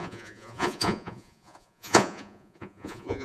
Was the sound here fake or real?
fake